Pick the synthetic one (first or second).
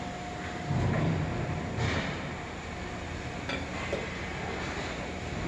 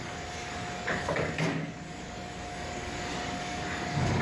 second